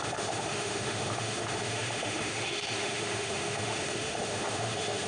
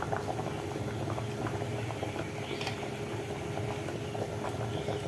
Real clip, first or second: second